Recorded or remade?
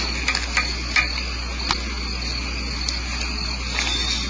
recorded